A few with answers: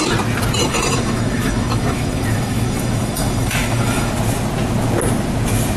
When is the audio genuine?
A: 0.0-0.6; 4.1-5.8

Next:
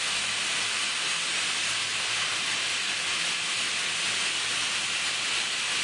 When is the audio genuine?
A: 0.0-5.8

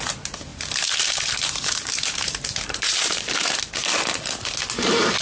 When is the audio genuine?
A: 0.0-0.5; 3.6-5.2

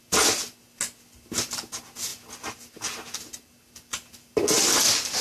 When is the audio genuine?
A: 0.0-5.2

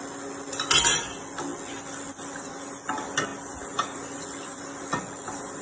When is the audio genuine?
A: 0.0-5.6

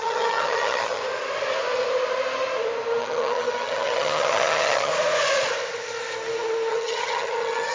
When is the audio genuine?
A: 1.0-3.0; 4.9-6.7